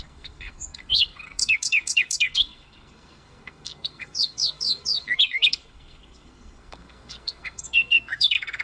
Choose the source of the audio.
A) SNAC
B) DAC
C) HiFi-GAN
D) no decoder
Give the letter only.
A